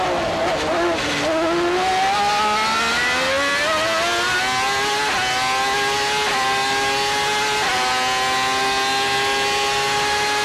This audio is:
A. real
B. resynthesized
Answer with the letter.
A